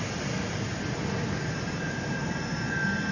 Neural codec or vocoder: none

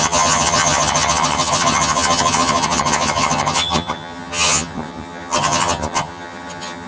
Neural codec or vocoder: vocoder, HiFi-GAN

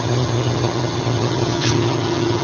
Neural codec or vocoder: vocoder, HiFi-GAN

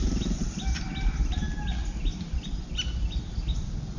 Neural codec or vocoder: none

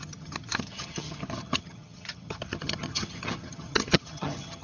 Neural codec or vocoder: vocoder, HiFi-GAN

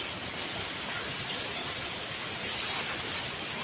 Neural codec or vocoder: none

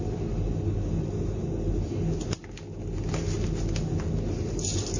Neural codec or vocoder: none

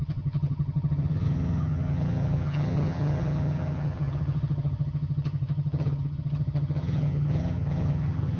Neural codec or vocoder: vocoder, HiFi-GAN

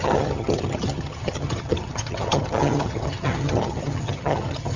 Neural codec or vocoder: vocoder, HiFi-GAN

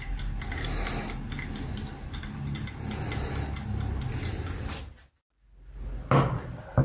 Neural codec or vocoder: none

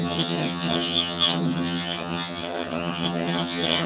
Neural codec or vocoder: vocoder, HiFi-GAN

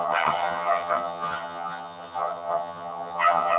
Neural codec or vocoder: vocoder, HiFi-GAN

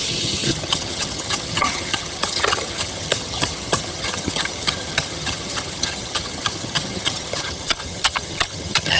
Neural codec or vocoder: vocoder, HiFi-GAN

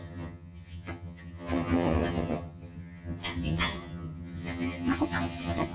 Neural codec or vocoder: vocoder, HiFi-GAN